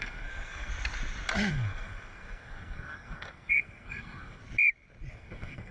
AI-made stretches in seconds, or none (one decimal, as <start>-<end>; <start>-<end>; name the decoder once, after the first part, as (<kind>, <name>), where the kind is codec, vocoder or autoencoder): 0.0-0.7 (codec, SNAC); 1.5-4.4; 5.1-5.7